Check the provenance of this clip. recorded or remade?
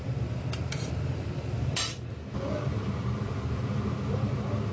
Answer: remade